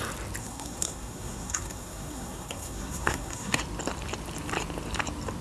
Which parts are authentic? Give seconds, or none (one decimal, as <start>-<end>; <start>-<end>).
0.0-0.4; 3.6-5.4